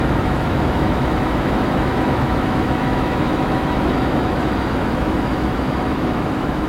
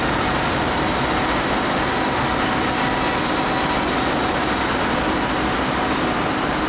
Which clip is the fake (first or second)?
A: first